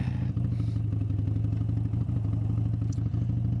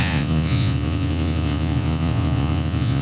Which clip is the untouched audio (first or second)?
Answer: first